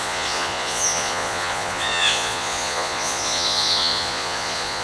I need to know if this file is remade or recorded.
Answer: remade